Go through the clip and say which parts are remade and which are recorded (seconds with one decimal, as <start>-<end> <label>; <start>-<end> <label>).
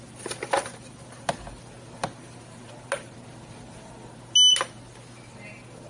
0.0-5.9 recorded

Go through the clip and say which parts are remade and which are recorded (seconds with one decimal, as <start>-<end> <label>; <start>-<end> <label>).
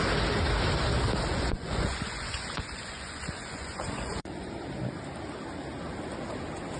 0.0-1.3 recorded; 1.3-4.5 remade; 4.5-6.8 recorded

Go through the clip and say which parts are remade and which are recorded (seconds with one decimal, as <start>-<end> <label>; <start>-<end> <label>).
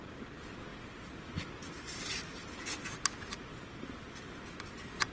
0.0-5.1 recorded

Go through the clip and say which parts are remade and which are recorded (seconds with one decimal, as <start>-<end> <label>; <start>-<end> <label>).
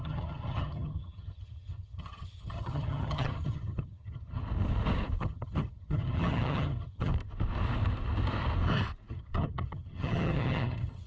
0.0-4.4 remade; 4.4-5.2 recorded; 5.2-7.1 remade; 7.1-9.1 recorded; 9.1-11.1 remade